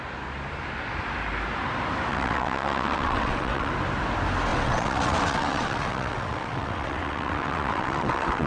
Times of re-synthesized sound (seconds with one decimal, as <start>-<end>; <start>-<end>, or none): 2.1-3.7; 4.5-8.5